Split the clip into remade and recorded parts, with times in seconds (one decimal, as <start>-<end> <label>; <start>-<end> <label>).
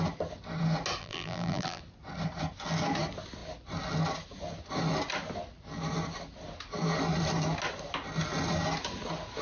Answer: 0.0-1.0 recorded; 1.0-1.8 remade; 1.8-9.4 recorded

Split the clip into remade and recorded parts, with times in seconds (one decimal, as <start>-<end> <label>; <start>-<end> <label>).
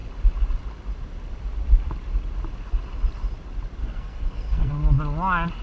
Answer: 0.0-3.8 recorded; 3.8-4.7 remade; 4.7-5.6 recorded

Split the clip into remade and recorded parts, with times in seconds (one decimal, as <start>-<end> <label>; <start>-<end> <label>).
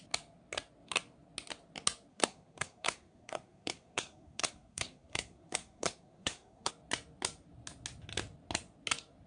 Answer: 0.0-2.1 recorded; 2.1-6.7 remade; 6.7-9.3 recorded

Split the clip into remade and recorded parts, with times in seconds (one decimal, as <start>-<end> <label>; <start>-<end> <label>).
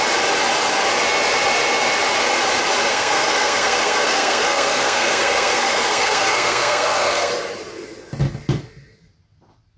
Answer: 0.0-2.9 recorded; 2.9-7.3 remade; 7.3-9.8 recorded